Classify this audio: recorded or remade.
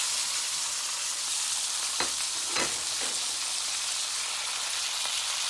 recorded